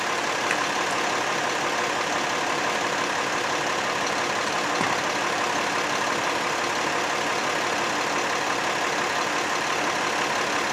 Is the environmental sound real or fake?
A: real